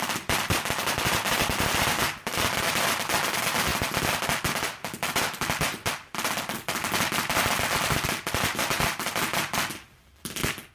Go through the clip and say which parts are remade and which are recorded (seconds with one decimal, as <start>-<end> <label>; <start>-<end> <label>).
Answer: 0.0-10.7 recorded